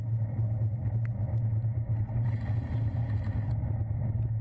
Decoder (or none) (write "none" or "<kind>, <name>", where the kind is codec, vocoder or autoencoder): none